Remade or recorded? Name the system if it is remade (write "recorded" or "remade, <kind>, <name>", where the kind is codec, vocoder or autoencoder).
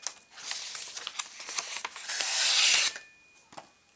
recorded